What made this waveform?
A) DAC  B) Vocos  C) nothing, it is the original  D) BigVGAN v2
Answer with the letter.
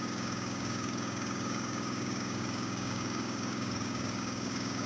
A